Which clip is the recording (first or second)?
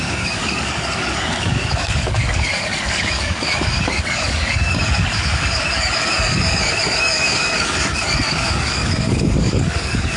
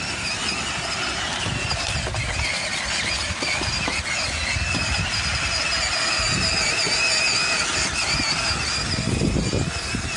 second